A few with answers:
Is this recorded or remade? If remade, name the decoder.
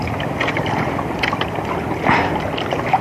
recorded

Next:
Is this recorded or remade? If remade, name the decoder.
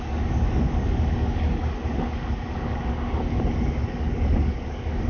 remade, codec, DAC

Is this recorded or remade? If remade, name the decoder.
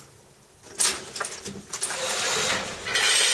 recorded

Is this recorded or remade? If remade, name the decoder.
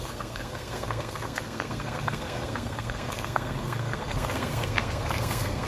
remade, codec, SNAC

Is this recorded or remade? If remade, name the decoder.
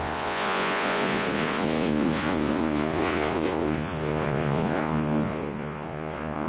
remade, vocoder, Vocos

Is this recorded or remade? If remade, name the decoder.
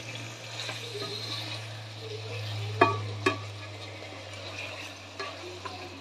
recorded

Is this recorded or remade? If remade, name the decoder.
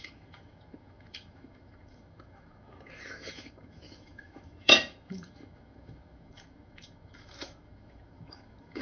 remade, autoencoder, DAC-VAE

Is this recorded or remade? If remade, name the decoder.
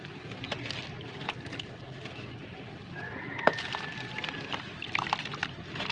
recorded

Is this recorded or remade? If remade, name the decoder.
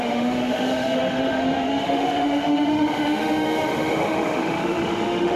remade, autoencoder, DAC-VAE